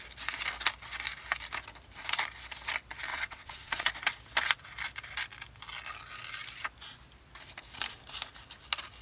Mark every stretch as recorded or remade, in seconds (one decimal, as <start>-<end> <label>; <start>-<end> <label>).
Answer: 0.0-3.1 recorded; 3.1-3.9 remade; 3.9-9.0 recorded